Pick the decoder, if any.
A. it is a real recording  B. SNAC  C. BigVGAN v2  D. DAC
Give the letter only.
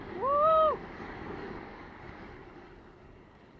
D